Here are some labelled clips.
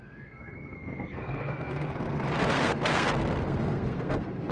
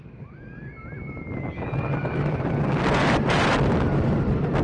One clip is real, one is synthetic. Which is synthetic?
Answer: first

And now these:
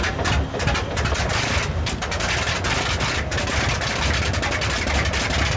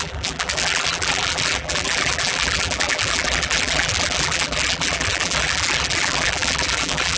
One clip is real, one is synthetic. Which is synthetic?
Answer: second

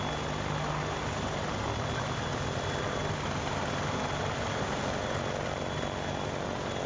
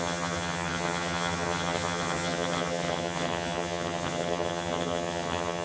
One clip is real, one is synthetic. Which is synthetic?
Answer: second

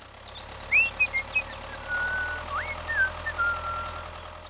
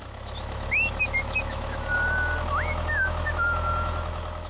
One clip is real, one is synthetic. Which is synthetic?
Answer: second